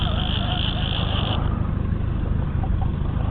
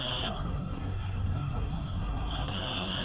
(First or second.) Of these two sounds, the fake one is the second